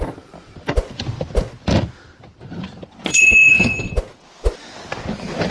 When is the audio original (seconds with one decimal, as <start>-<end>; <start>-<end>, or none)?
0.0-3.1; 3.9-5.5